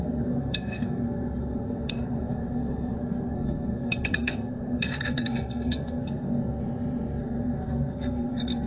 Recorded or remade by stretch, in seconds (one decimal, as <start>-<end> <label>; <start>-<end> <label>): 0.0-6.6 remade; 6.6-7.2 recorded; 7.2-8.7 remade